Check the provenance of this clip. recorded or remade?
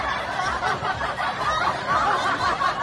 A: remade